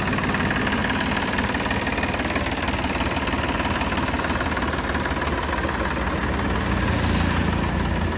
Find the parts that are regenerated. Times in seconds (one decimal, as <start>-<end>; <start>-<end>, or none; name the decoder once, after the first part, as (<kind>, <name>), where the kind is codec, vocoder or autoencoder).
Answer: none